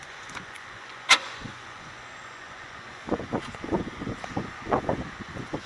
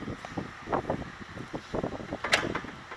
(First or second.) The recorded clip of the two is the second